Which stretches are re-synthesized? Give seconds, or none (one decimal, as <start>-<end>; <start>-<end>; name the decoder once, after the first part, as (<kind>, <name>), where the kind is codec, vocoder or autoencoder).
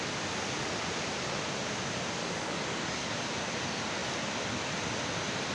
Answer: 2.2-3.1 (codec, DAC)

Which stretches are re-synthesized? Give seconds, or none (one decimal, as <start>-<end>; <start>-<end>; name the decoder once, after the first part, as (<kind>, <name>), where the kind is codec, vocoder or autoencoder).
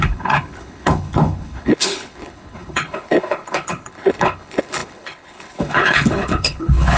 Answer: 0.0-7.0 (codec, HILCodec)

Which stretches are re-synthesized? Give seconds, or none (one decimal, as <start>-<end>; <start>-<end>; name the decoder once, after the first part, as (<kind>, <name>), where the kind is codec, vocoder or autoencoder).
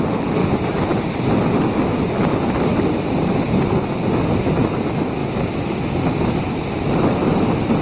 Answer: 0.4-1.5 (vocoder, BigVGAN v2); 2.7-4.1; 5.2-5.7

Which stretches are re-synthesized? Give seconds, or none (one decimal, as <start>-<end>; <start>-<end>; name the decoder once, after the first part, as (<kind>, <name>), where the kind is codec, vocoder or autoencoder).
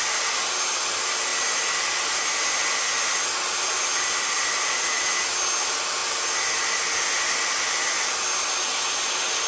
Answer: none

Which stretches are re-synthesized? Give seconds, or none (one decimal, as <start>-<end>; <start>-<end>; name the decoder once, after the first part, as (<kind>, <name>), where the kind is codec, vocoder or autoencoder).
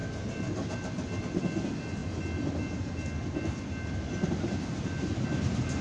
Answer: none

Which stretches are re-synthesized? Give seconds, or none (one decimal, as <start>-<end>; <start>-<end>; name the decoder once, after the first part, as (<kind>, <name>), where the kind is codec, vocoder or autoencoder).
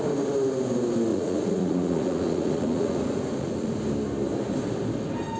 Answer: 1.1-3.8 (vocoder, Vocos)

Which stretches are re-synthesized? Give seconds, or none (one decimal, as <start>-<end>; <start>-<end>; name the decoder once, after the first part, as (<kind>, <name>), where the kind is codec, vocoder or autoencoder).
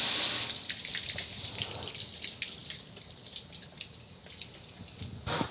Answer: none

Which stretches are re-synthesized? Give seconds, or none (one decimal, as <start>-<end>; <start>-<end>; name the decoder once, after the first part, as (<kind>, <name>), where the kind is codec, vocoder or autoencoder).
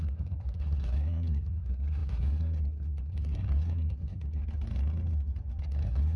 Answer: 0.0-4.4 (codec, SNAC); 5.6-6.2